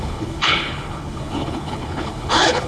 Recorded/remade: remade